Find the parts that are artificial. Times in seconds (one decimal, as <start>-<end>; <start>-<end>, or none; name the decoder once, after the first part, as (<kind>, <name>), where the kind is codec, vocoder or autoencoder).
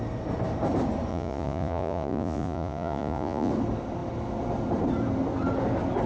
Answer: 1.1-3.5 (vocoder, Vocos)